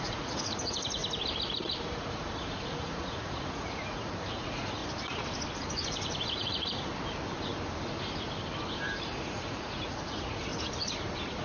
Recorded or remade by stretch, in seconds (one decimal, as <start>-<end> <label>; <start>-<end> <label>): 0.0-1.0 remade; 1.0-2.0 recorded; 2.0-4.8 remade; 4.8-6.3 recorded; 6.3-6.9 remade; 6.9-8.7 recorded; 8.7-10.5 remade; 10.5-11.4 recorded

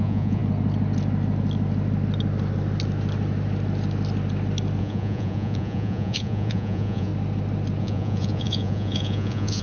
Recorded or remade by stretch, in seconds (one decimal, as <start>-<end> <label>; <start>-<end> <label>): 0.0-0.4 remade; 0.4-4.8 recorded; 4.8-7.1 remade; 7.1-7.8 recorded; 7.8-9.6 remade

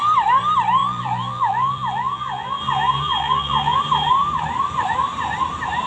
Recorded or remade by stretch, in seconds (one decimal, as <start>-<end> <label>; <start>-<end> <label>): 0.0-0.8 recorded; 0.8-3.8 remade; 3.8-5.9 recorded

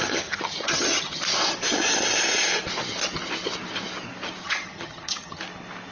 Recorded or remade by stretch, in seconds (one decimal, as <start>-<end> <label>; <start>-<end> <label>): 0.0-1.2 remade; 1.2-4.4 recorded; 4.4-5.4 remade; 5.4-5.9 recorded

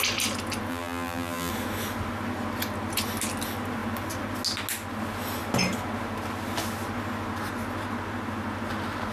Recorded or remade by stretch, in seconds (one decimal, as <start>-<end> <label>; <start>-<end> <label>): 0.0-0.7 recorded; 0.7-1.5 remade; 1.5-9.1 recorded